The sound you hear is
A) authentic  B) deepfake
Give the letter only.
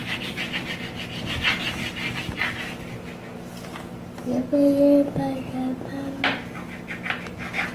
A